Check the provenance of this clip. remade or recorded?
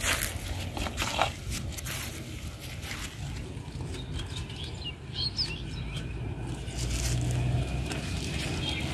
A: recorded